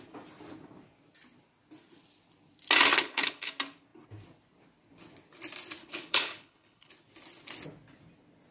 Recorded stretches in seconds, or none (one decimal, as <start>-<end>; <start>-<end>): 0.0-2.9; 3.5-5.8; 6.9-8.5